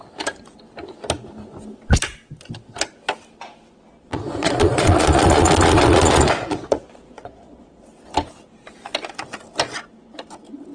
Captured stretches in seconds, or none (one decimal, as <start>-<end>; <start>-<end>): 0.0-3.9; 7.8-10.7